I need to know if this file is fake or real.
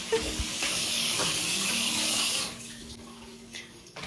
fake